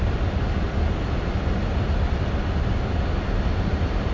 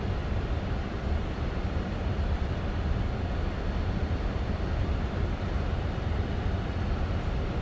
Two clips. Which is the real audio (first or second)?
first